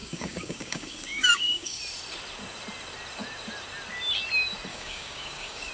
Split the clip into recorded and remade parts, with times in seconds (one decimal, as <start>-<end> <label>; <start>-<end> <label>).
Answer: 0.0-1.8 remade; 1.8-4.7 recorded; 4.7-5.7 remade